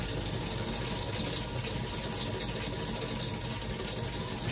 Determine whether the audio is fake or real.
real